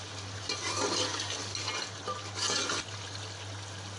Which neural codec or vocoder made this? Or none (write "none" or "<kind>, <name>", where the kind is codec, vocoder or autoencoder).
none